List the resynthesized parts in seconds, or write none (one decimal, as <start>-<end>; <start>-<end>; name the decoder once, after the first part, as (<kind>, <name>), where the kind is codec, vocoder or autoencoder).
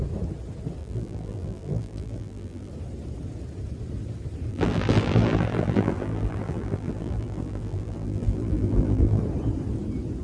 0.8-2.7 (vocoder, BigVGAN v2); 4.5-9.2